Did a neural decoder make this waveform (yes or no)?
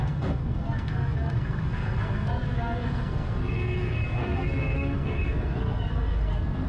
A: yes